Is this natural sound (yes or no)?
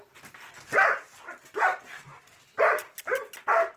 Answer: yes